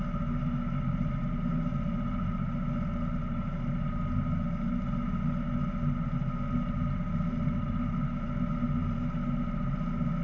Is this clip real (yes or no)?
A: yes